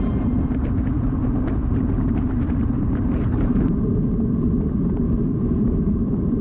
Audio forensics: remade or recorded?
remade